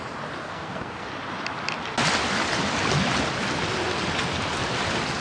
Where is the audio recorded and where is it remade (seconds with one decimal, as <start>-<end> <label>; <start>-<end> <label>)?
0.0-0.4 recorded; 0.4-1.1 remade; 1.1-5.2 recorded